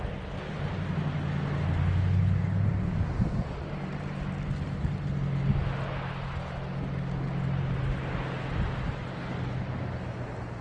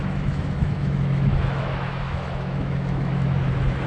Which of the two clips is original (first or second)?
first